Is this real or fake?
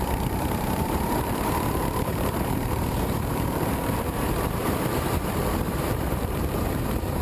fake